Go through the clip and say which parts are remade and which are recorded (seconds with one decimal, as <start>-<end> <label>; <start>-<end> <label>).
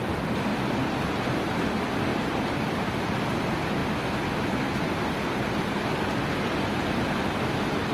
0.0-7.9 recorded